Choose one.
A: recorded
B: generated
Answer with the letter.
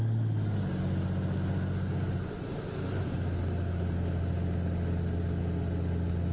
A